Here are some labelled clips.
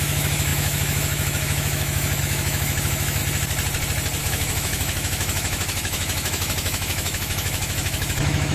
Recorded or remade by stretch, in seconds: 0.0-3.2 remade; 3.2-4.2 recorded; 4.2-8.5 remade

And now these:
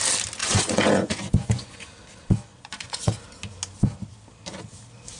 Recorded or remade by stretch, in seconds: 0.0-0.4 recorded; 0.4-1.9 remade; 1.9-2.5 recorded; 2.5-3.2 remade; 3.2-5.2 recorded

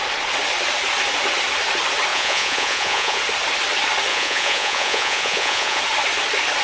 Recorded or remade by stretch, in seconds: 0.0-2.1 recorded; 2.1-3.2 remade; 3.2-4.1 recorded; 4.1-5.8 remade; 5.8-6.6 recorded